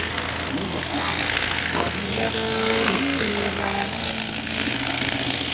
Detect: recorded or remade remade